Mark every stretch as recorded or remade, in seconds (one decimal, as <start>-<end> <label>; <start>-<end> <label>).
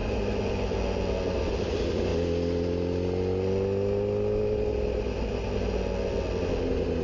0.0-7.0 recorded